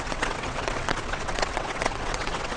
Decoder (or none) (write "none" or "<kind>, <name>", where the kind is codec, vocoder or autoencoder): vocoder, WaveNeXt